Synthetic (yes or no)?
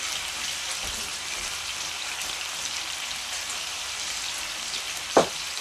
yes